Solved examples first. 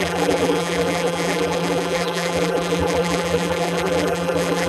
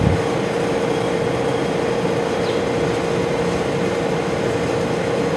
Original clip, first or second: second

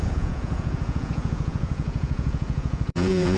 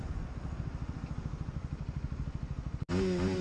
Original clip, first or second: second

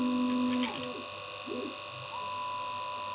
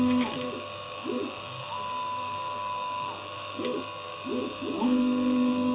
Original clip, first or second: first